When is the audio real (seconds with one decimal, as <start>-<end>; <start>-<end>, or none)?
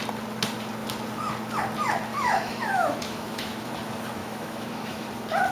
0.0-2.1; 3.7-4.2; 5.1-5.5